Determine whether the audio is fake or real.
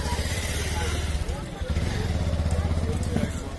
real